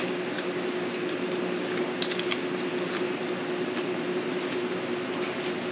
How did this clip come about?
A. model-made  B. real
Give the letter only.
B